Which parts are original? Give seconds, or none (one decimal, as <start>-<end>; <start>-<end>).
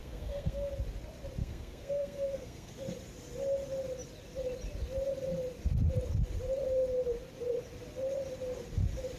0.7-1.4; 2.7-9.2